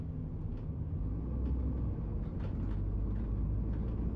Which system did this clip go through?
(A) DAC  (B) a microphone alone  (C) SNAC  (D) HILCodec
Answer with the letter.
B